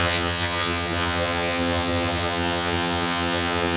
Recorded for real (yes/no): no